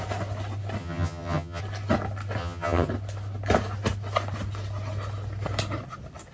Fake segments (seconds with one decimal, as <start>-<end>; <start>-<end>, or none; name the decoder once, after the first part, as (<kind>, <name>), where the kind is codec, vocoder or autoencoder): 0.8-1.6 (vocoder, HiFi-GAN); 2.4-2.9